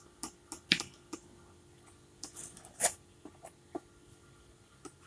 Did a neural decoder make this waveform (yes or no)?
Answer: no